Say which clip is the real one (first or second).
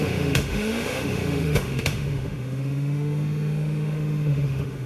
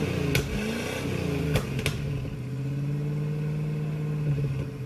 second